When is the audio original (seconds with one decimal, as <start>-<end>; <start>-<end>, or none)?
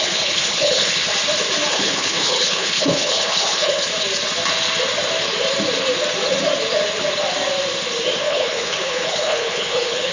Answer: 1.0-1.7; 3.9-8.2